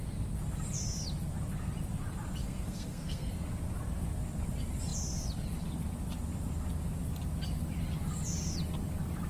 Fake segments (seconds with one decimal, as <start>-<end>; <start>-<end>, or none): 2.4-3.3